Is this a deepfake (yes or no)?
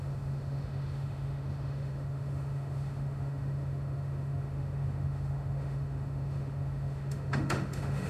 yes